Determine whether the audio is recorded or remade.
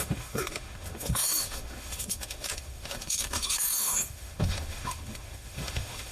remade